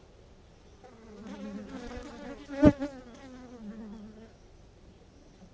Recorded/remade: recorded